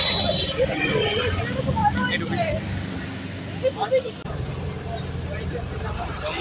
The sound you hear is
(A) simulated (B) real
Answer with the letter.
B